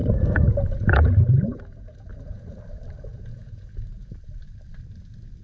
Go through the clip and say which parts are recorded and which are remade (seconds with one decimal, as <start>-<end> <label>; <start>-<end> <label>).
0.0-2.6 remade; 2.6-3.1 recorded; 3.1-4.1 remade; 4.1-5.4 recorded